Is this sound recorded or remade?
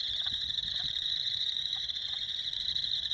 remade